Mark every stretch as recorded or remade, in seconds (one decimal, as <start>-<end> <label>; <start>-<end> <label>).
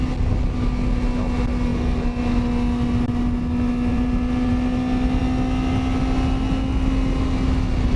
0.0-3.9 recorded; 3.9-4.5 remade; 4.5-8.0 recorded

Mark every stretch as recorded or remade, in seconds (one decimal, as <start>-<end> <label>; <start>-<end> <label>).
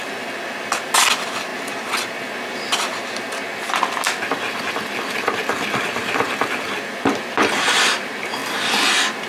0.0-9.3 recorded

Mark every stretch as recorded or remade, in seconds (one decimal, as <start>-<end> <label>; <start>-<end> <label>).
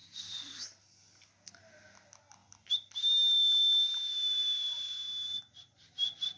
0.0-6.4 recorded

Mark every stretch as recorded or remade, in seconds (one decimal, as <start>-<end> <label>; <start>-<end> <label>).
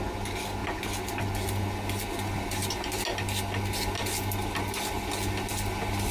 0.0-6.1 recorded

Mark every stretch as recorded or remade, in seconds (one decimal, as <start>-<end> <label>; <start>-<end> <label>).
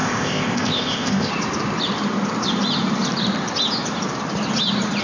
0.0-1.3 remade; 1.3-5.0 recorded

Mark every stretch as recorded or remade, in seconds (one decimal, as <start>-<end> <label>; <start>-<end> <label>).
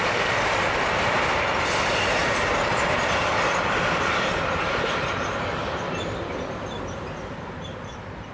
0.0-2.2 remade; 2.2-3.7 recorded; 3.7-8.3 remade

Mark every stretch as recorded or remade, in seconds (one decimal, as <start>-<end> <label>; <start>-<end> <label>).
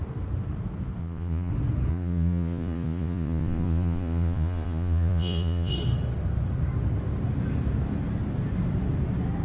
0.0-1.0 recorded; 1.0-1.5 remade; 1.5-1.9 recorded; 1.9-5.7 remade; 5.7-9.4 recorded